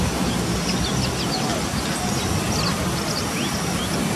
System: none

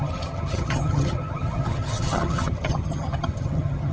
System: vocoder, HiFi-GAN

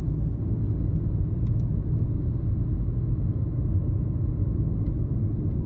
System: none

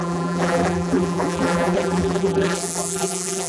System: vocoder, BigVGAN v2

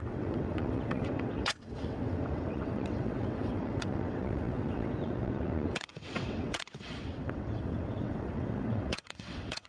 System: vocoder, WaveNeXt